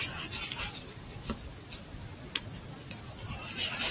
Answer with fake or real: real